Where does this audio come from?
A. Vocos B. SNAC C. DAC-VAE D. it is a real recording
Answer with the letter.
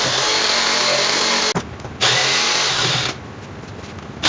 D